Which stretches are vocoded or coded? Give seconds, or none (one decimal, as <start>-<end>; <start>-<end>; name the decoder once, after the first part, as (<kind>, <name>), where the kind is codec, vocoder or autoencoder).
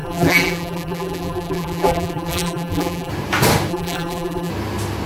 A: 0.0-3.1 (vocoder, BigVGAN v2); 3.7-4.5